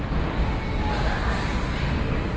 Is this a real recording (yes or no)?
yes